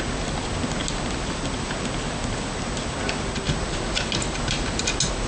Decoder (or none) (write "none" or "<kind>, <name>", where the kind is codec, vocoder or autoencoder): none